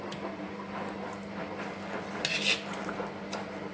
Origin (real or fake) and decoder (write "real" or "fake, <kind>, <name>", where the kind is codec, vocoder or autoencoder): real